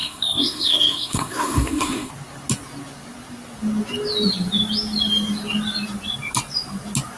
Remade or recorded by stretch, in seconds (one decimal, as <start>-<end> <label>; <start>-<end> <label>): 0.0-2.1 remade; 2.1-7.2 recorded